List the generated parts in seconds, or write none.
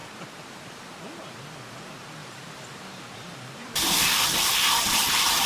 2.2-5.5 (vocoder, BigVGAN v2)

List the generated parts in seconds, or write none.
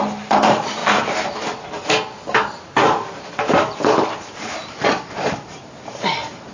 0.0-0.8 (vocoder, BigVGAN v2); 4.7-6.5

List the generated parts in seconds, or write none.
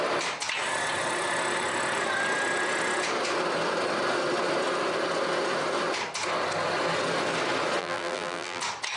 7.8-8.6 (vocoder, BigVGAN v2)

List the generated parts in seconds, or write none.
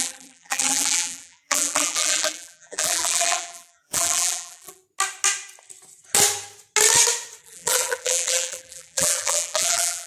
0.0-4.8 (vocoder, BigVGAN v2); 7.4-10.1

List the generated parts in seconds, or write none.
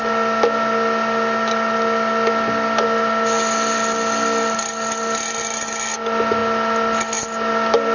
none